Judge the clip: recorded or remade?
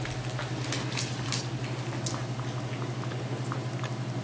recorded